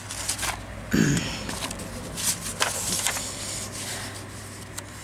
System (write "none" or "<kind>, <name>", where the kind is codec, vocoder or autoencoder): none